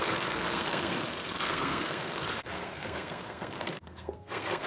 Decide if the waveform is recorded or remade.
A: remade